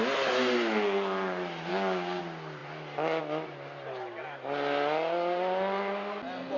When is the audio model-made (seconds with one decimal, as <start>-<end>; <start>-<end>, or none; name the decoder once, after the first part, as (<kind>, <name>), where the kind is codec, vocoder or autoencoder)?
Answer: 1.7-2.2 (codec, DAC)